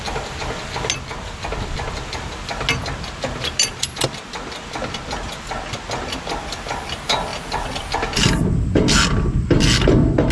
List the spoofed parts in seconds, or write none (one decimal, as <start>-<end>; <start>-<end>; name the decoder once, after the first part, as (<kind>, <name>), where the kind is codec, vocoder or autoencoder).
none